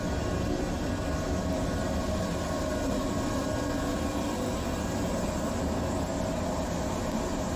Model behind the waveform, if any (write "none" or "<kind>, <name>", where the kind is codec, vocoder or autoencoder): none